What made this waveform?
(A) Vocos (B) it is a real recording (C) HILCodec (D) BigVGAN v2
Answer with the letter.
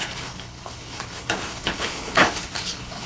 C